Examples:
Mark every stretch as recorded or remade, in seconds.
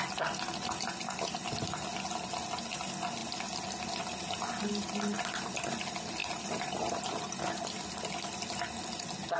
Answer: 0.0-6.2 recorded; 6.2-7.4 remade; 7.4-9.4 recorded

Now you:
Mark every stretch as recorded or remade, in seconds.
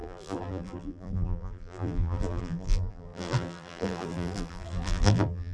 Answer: 0.0-5.5 remade